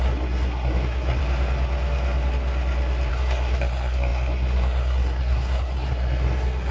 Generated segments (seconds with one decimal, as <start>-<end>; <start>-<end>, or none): 0.0-1.2; 3.1-6.7